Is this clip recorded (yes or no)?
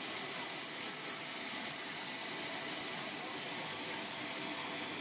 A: yes